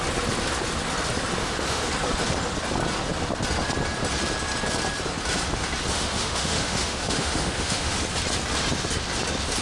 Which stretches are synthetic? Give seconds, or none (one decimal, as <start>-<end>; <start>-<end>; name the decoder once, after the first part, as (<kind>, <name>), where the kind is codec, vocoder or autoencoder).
1.4-1.9 (autoencoder, DAC-VAE); 5.9-8.0